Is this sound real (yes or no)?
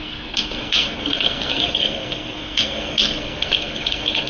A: no